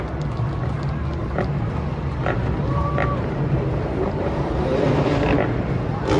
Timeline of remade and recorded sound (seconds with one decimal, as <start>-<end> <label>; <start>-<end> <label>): 0.0-1.2 recorded; 1.2-4.9 remade; 4.9-6.2 recorded